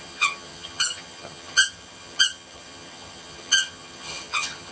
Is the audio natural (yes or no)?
no